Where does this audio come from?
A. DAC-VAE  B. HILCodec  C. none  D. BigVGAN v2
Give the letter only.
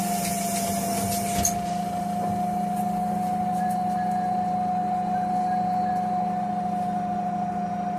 C